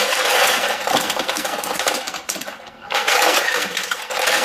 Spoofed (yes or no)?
yes